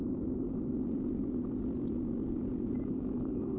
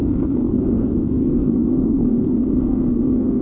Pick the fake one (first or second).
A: second